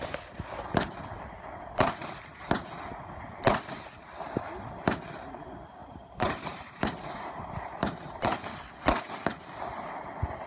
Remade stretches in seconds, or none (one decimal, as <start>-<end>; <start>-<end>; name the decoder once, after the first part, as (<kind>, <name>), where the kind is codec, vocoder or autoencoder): 5.8-8.4 (vocoder, BigVGAN v2)